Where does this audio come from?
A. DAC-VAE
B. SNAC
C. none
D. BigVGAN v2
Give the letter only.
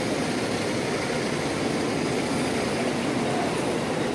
C